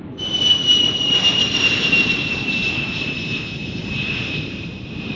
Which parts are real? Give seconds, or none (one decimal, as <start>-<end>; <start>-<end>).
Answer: none